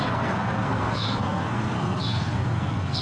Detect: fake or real fake